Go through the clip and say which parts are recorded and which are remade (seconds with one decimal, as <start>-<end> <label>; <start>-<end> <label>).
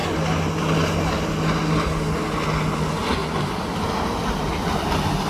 0.0-3.2 recorded; 3.2-5.3 remade